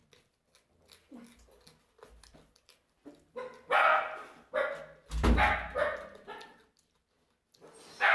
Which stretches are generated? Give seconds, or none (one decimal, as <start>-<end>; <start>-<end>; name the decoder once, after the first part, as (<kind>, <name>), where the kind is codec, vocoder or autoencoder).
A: none